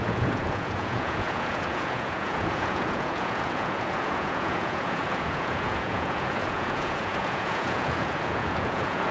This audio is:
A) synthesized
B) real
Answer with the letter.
A